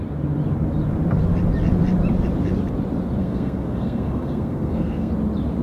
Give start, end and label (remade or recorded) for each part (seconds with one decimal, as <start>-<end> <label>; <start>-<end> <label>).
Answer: 0.0-3.2 recorded; 3.2-5.1 remade; 5.1-5.6 recorded